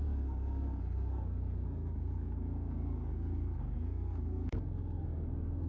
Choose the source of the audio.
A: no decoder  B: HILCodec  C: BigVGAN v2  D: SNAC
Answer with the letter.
D